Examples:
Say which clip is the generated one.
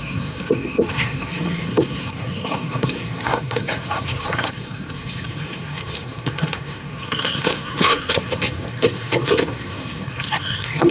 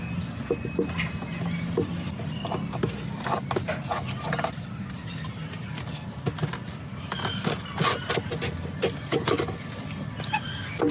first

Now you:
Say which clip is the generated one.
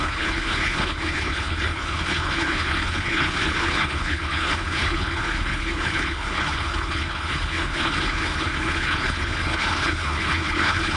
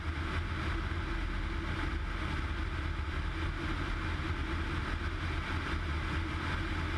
first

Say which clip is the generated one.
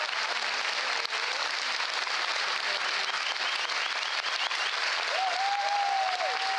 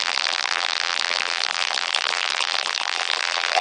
second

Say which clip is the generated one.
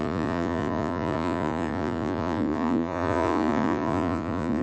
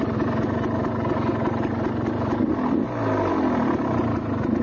first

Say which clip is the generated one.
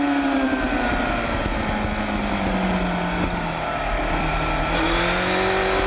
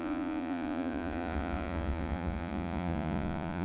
second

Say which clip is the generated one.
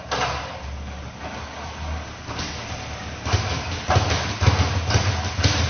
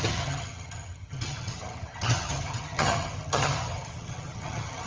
second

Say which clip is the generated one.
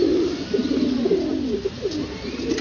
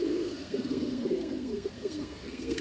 second